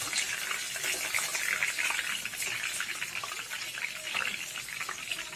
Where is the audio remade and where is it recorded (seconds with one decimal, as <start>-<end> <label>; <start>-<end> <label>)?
0.0-5.4 recorded